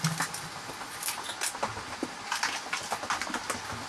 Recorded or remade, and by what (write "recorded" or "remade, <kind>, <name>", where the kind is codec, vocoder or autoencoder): recorded